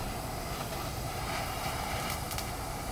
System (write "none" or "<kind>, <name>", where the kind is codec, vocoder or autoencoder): vocoder, BigVGAN v2